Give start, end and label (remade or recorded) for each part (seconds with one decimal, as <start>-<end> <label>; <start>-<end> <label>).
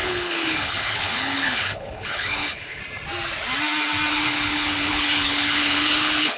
0.0-2.8 remade; 2.8-4.1 recorded; 4.1-6.4 remade